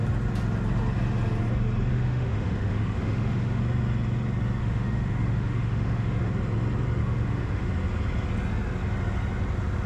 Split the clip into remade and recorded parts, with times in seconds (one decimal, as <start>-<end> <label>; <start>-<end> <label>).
0.0-1.9 recorded; 1.9-3.6 remade; 3.6-4.6 recorded; 4.6-6.3 remade; 6.3-7.0 recorded; 7.0-7.7 remade; 7.7-9.9 recorded